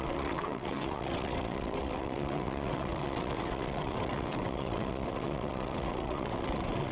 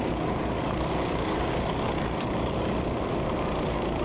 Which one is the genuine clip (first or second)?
second